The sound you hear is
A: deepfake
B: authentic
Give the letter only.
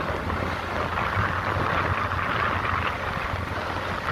B